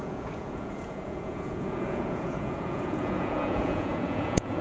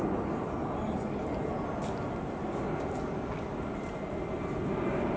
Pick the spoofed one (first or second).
first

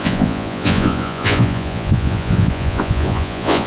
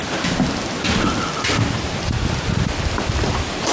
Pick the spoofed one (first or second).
first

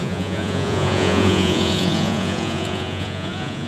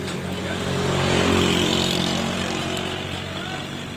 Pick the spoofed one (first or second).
first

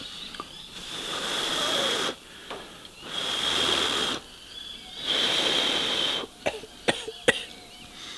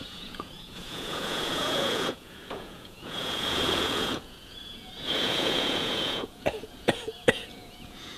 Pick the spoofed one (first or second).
second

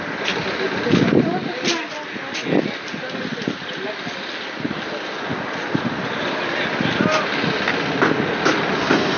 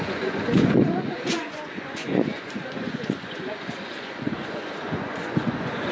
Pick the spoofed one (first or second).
second